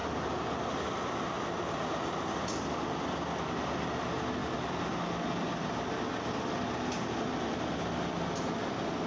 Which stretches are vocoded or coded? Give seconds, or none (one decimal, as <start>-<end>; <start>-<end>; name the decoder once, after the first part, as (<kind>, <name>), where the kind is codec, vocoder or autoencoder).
none